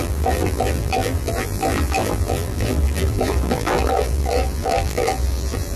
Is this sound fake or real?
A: fake